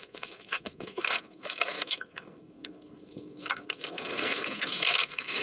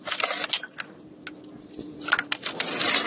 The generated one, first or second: first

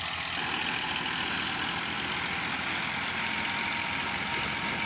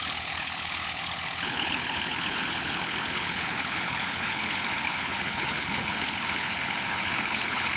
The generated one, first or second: second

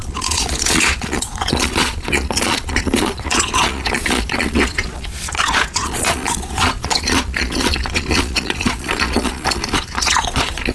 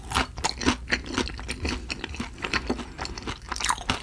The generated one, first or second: first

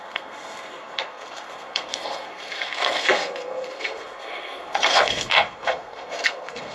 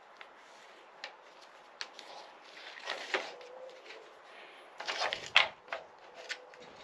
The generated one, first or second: first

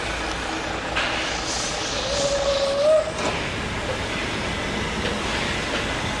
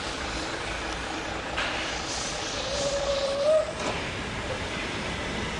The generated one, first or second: second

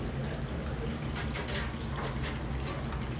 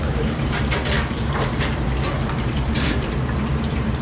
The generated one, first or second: second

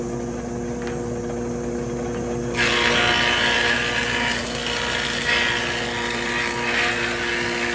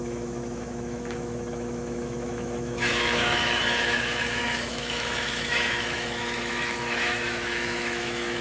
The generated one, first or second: second